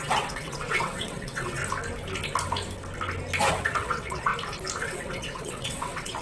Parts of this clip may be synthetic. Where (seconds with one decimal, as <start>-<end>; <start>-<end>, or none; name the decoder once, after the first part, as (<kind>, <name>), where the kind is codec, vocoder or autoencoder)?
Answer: 0.0-1.6 (vocoder, WaveNeXt); 3.5-4.3; 4.8-6.2